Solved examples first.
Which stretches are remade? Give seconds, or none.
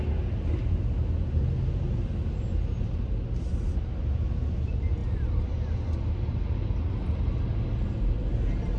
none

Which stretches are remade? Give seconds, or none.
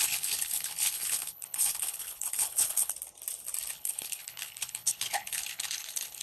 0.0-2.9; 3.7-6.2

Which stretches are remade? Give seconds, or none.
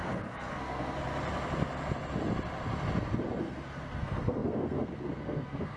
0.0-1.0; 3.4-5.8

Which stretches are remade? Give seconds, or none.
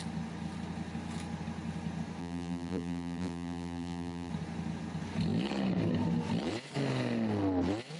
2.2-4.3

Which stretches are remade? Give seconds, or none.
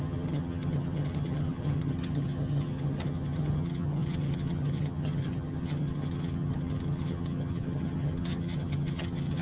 0.0-9.4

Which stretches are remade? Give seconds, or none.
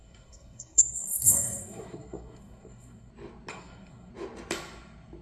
0.0-3.1; 3.5-4.1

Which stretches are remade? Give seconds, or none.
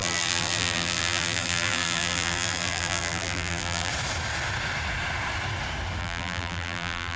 0.0-3.9; 6.0-7.2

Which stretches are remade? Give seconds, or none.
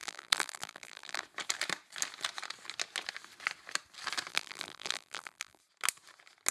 0.0-1.2; 4.3-5.6